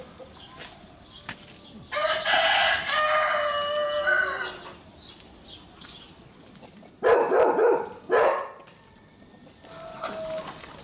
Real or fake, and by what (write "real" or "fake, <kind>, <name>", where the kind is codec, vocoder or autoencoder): real